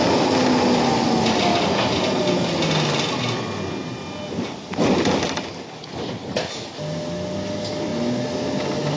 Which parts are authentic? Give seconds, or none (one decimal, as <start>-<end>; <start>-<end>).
0.0-9.0